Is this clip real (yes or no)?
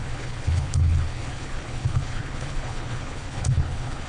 no